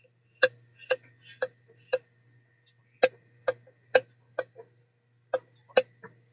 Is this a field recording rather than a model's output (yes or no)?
yes